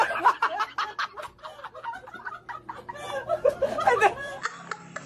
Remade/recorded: recorded